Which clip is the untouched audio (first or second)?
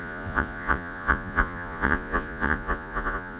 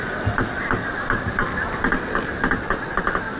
second